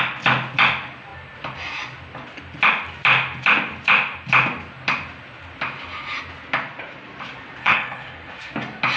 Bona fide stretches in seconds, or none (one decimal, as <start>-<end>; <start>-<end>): 0.0-7.6; 8.3-9.0